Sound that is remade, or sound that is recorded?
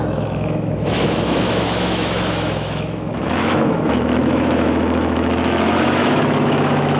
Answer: remade